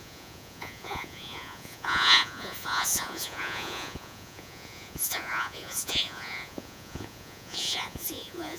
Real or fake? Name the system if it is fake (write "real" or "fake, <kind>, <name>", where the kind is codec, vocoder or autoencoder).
fake, vocoder, Vocos